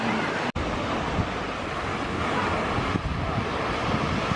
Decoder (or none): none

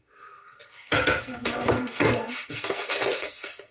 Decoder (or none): codec, SNAC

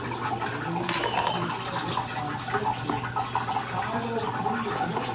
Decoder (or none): none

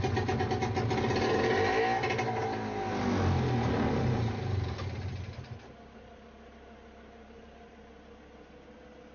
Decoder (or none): none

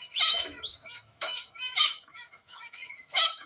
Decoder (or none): autoencoder, DAC-VAE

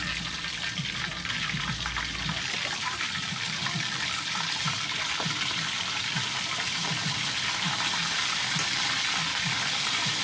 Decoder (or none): vocoder, BigVGAN v2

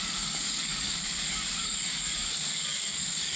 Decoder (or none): codec, DAC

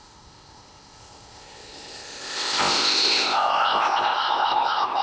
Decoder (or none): codec, ZipCodec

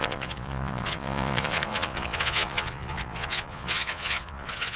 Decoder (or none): vocoder, Vocos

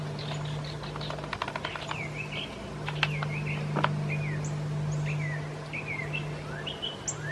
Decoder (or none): none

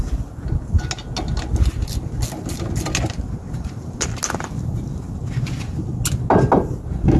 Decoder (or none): none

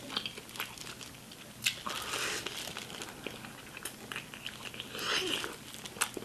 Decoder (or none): none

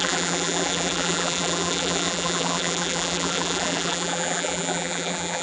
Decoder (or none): vocoder, BigVGAN v2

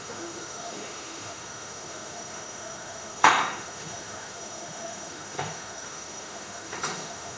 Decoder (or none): autoencoder, DAC-VAE